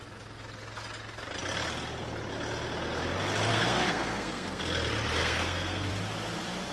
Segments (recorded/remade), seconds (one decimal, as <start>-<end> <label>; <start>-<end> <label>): 0.0-3.5 recorded; 3.5-4.6 remade; 4.6-5.2 recorded; 5.2-5.9 remade; 5.9-6.7 recorded